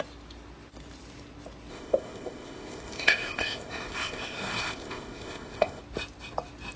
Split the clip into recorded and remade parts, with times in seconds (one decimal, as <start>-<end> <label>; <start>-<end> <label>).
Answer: 0.0-1.7 recorded; 1.7-5.8 remade; 5.8-6.8 recorded